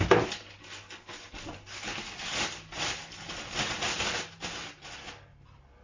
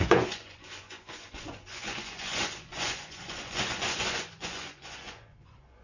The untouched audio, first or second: first